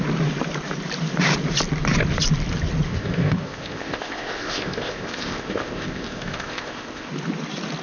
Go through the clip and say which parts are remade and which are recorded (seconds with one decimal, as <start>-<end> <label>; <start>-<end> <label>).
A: 0.0-2.9 recorded; 2.9-7.1 remade; 7.1-7.8 recorded